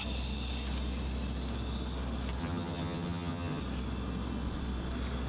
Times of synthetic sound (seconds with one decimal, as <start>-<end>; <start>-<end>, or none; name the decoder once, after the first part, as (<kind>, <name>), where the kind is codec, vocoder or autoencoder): 2.4-3.6 (vocoder, HiFi-GAN)